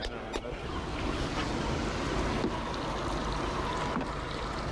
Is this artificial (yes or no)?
no